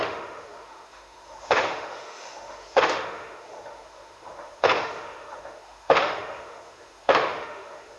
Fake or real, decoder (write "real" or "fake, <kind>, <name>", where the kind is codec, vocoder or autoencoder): fake, autoencoder, DAC-VAE